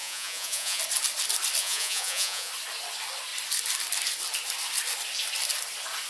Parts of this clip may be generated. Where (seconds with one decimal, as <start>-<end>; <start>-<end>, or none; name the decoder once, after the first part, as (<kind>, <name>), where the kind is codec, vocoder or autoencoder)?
0.0-0.8 (vocoder, Vocos); 1.6-2.5